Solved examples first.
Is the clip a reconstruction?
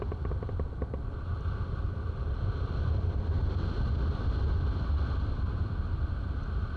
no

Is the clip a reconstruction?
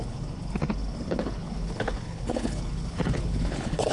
yes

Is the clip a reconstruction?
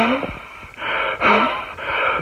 yes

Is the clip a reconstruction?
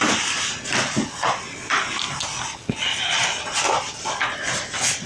no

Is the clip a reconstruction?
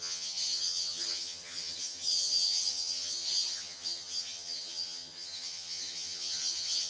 yes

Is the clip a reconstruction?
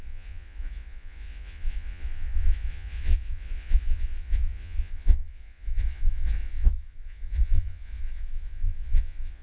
yes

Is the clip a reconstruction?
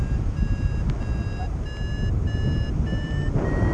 no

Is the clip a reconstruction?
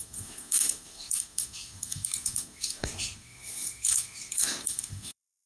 yes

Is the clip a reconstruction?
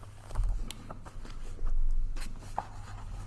no